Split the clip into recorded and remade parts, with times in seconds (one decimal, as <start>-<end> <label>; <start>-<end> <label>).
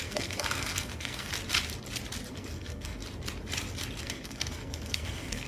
0.0-1.3 remade; 1.3-2.3 recorded; 2.3-3.0 remade; 3.0-4.0 recorded; 4.0-5.5 remade